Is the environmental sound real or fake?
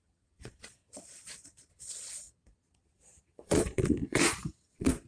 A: fake